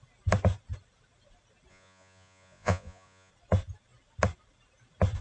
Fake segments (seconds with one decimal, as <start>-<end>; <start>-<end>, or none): 1.7-3.3